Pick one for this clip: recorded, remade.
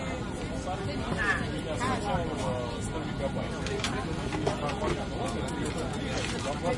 recorded